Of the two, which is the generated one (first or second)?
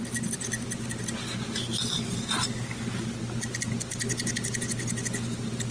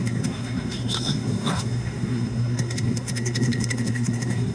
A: second